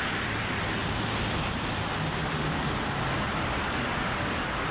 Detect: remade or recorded recorded